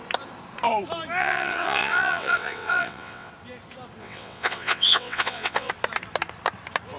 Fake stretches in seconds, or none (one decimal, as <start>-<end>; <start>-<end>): 1.2-3.3; 4.0-5.7